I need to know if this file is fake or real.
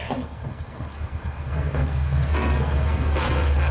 fake